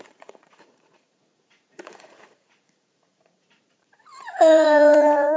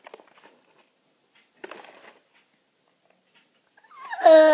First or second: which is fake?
first